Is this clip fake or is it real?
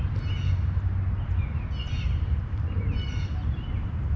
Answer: real